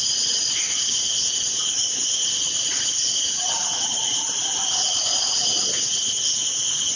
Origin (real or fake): real